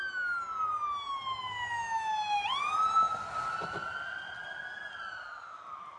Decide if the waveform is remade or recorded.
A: recorded